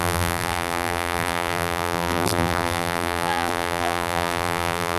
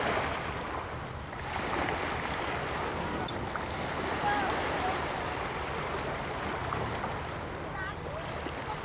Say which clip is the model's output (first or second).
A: first